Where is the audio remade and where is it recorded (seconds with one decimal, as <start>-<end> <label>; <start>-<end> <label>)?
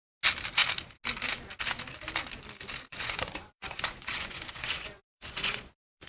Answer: 0.0-2.9 recorded; 2.9-6.1 remade